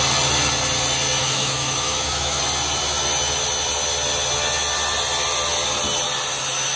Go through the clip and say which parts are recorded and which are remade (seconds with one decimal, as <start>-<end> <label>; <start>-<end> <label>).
0.0-1.2 recorded; 1.2-2.4 remade; 2.4-6.8 recorded